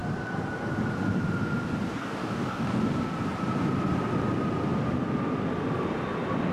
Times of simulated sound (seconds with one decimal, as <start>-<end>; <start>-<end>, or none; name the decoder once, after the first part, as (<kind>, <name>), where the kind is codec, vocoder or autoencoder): 1.9-2.8 (codec, DAC)